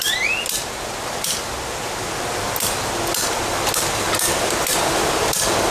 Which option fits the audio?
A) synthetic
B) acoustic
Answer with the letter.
B